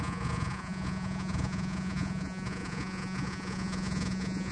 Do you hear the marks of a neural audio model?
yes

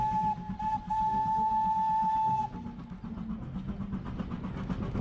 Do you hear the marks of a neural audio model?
no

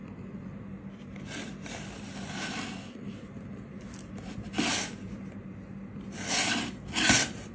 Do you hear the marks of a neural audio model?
no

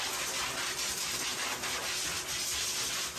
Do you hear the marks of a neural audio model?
no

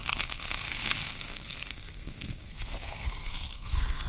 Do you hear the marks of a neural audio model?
yes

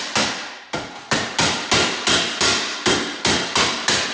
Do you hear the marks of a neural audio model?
no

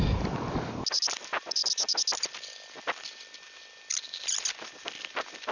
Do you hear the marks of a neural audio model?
no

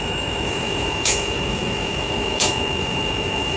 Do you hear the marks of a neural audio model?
yes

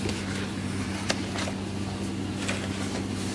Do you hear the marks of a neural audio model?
no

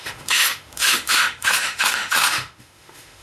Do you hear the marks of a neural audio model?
yes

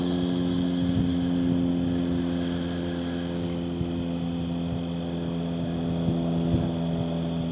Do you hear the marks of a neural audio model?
no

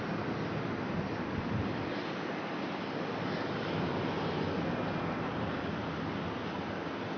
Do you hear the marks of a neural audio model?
no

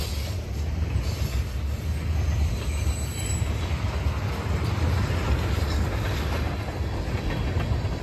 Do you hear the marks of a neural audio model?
no